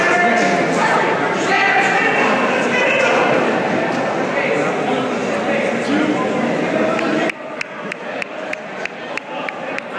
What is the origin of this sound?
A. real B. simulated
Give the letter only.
A